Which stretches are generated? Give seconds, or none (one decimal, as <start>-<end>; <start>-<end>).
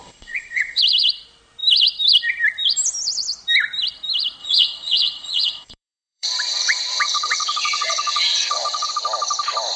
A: 0.0-0.8; 4.4-8.9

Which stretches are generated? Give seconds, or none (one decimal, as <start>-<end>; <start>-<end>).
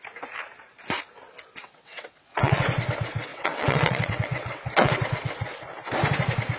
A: 1.6-2.6; 3.3-4.9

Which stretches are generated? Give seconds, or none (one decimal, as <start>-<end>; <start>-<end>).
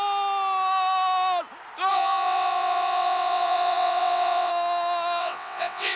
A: 1.9-4.5; 5.2-6.0